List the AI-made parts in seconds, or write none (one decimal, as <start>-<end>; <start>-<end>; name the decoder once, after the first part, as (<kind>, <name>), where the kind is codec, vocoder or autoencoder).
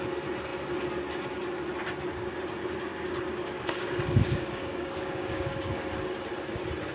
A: 2.9-5.9 (codec, DAC)